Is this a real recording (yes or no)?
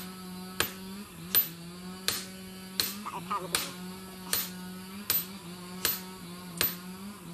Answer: yes